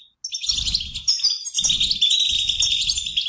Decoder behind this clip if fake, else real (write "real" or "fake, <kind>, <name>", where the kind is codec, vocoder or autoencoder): real